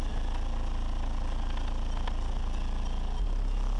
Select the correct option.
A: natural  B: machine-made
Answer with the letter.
A